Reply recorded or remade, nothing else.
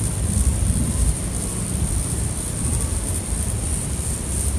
remade